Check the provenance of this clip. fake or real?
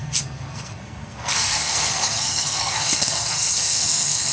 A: fake